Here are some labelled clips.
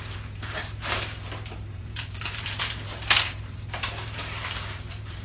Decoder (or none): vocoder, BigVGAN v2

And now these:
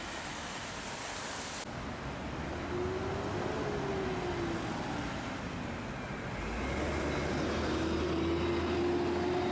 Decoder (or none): none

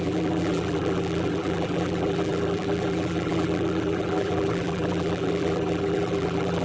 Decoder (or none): vocoder, BigVGAN v2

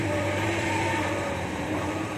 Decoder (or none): vocoder, BigVGAN v2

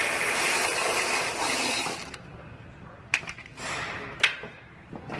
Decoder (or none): vocoder, BigVGAN v2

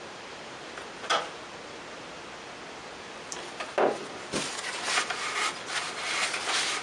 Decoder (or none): none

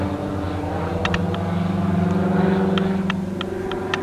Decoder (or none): none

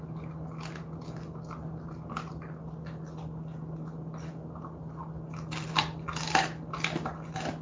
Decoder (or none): none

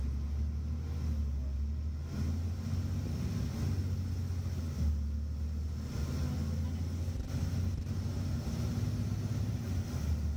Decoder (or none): none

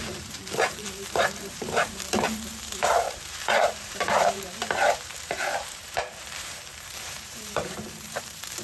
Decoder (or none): vocoder, BigVGAN v2